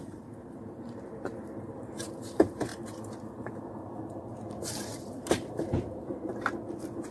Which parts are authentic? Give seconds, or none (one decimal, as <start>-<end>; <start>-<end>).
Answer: 2.7-4.5; 6.3-7.1